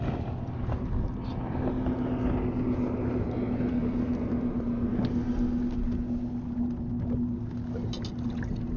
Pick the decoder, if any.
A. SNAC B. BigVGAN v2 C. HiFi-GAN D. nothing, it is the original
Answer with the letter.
D